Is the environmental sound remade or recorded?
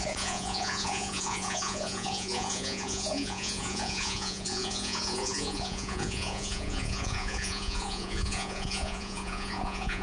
remade